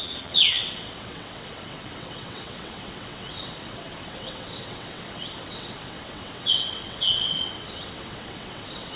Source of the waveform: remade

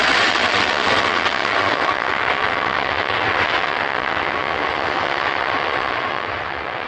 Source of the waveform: remade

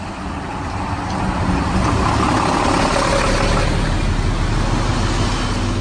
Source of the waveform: recorded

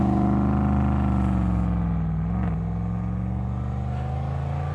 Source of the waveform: recorded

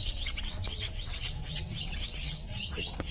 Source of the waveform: remade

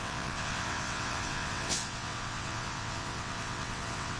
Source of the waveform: remade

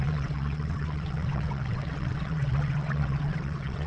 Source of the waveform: remade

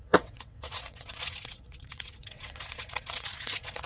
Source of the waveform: remade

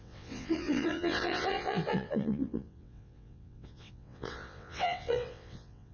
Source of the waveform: remade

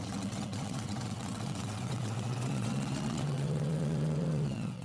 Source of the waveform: remade